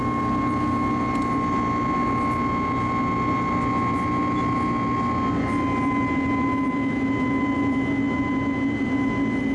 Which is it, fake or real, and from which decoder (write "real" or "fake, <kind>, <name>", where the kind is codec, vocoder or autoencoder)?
real